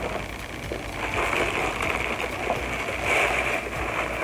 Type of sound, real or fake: real